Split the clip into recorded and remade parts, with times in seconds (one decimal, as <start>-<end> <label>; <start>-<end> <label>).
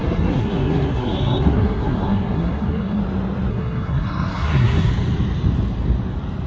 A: 0.0-3.0 remade; 3.0-3.5 recorded; 3.5-4.9 remade; 4.9-6.5 recorded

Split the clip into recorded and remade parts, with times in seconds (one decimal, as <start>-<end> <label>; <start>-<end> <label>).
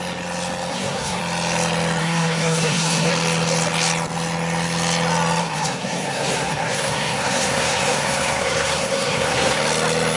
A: 0.0-0.7 recorded; 0.7-1.2 remade; 1.2-2.0 recorded; 2.0-3.1 remade; 3.1-5.4 recorded; 5.4-9.6 remade; 9.6-10.2 recorded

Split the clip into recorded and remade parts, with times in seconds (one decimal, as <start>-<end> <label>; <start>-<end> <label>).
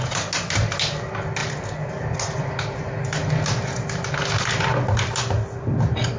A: 0.0-6.2 recorded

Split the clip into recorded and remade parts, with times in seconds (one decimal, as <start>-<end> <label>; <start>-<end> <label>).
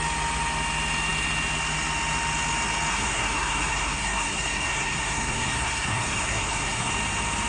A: 0.0-2.9 recorded; 2.9-6.9 remade; 6.9-7.5 recorded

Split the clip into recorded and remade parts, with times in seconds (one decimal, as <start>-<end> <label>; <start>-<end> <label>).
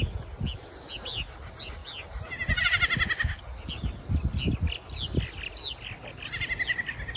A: 0.0-7.2 recorded